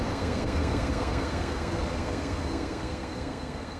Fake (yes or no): yes